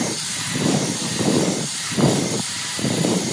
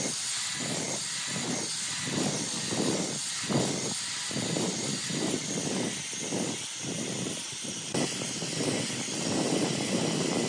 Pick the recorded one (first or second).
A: second